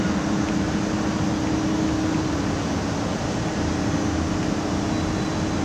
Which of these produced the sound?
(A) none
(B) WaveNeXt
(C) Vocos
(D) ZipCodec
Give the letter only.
A